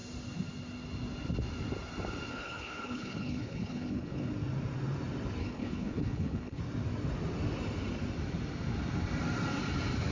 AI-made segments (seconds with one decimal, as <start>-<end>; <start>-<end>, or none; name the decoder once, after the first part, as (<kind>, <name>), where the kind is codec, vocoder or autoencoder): 2.3-4.3 (codec, HILCodec); 5.4-6.6